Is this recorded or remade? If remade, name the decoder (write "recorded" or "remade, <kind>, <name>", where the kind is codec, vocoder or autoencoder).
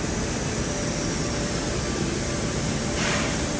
recorded